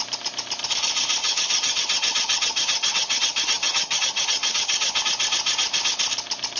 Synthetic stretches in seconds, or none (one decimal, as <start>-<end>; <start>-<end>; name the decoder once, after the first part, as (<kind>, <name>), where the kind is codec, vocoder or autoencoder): 1.2-5.0 (vocoder, HiFi-GAN)